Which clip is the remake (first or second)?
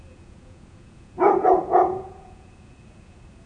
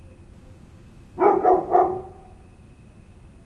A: first